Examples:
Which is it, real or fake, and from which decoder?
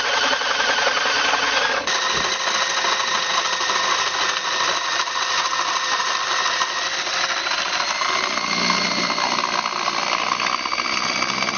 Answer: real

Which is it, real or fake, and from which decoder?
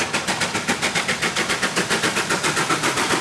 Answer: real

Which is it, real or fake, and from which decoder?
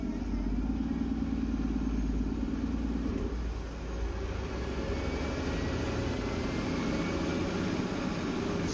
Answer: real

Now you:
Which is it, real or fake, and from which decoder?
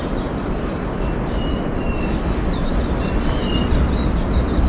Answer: real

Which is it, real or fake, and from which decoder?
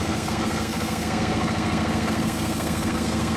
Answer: fake, codec, SNAC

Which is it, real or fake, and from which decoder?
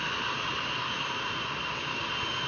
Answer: real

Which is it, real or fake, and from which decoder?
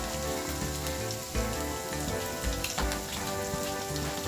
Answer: real